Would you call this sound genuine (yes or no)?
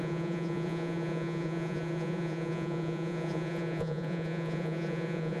no